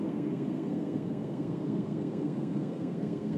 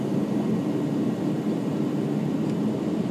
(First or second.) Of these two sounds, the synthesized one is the first